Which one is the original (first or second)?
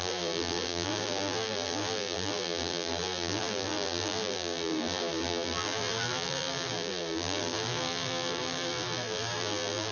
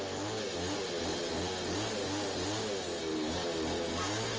second